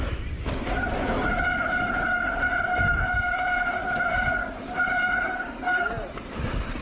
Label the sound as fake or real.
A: real